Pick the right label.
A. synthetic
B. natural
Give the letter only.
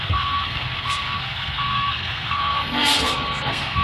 A